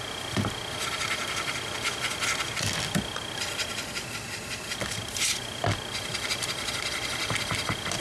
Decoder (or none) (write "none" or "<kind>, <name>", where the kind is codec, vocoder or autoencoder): none